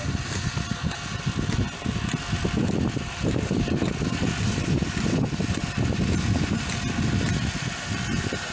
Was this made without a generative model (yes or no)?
yes